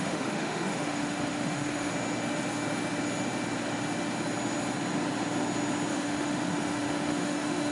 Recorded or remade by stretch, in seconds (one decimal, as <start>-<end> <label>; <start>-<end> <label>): 0.0-1.9 remade; 1.9-5.9 recorded; 5.9-7.7 remade